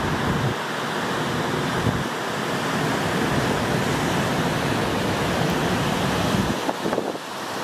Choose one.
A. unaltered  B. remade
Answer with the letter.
A